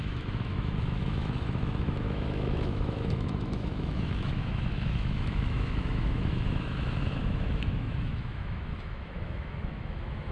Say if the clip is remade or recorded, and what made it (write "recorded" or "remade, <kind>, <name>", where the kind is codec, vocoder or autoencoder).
remade, autoencoder, DAC-VAE